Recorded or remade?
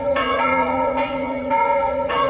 remade